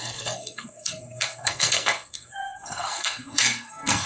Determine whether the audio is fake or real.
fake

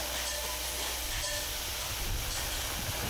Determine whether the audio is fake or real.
real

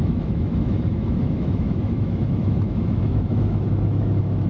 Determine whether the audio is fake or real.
fake